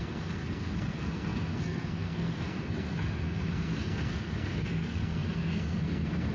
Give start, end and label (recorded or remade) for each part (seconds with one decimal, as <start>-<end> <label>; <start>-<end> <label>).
0.0-6.3 remade